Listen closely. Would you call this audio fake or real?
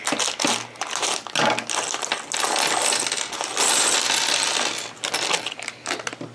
real